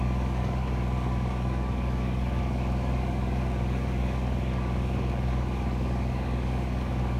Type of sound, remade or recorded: remade